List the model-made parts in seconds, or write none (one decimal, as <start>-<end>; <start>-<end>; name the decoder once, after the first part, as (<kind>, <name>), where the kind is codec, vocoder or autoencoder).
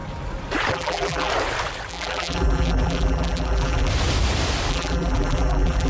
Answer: 0.7-1.3 (vocoder, BigVGAN v2); 1.9-3.9; 4.7-5.9